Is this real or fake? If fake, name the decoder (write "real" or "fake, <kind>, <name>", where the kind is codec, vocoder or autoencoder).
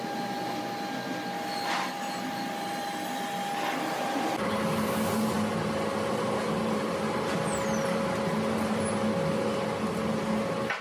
real